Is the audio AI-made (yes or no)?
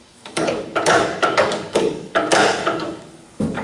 yes